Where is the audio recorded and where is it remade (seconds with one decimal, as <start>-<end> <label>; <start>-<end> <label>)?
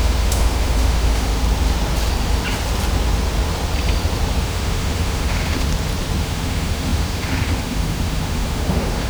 0.0-1.3 remade; 1.3-4.4 recorded; 4.4-5.7 remade; 5.7-6.2 recorded; 6.2-9.1 remade